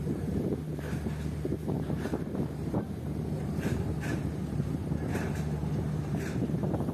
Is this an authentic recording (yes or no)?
no